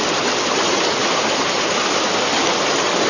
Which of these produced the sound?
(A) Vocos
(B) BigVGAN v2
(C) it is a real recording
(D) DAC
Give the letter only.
C